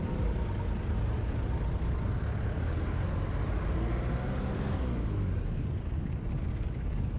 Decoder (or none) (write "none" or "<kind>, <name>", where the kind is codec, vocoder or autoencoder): none